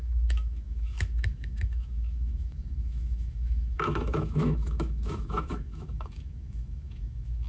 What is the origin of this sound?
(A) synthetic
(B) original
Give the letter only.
A